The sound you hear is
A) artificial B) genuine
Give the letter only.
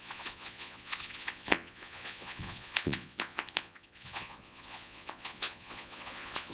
A